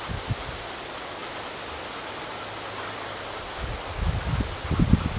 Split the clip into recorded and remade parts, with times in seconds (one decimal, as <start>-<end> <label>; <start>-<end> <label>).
0.0-5.2 recorded